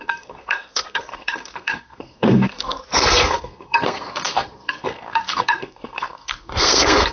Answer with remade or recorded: remade